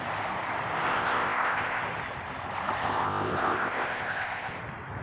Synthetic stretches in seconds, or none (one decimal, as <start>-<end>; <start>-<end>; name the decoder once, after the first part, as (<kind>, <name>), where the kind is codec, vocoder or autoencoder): 0.9-1.8 (codec, ZipCodec); 2.8-4.6